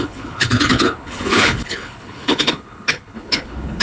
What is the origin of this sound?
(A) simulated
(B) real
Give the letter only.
A